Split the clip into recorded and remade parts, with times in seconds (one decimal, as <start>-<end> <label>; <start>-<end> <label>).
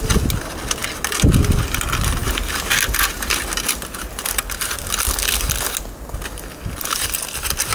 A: 0.0-7.7 recorded